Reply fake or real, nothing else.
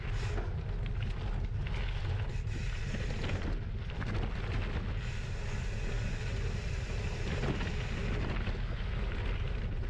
real